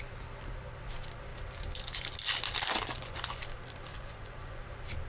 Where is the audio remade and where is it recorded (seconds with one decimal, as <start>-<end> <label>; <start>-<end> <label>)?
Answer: 0.0-2.9 recorded; 2.9-3.4 remade; 3.4-3.9 recorded; 3.9-4.6 remade; 4.6-5.1 recorded